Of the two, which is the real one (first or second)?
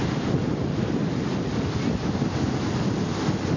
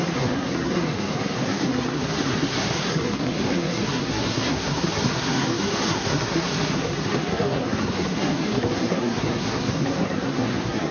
first